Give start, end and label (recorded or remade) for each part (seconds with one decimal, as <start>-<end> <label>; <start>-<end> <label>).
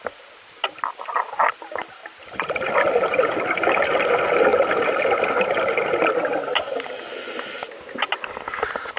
0.0-9.0 recorded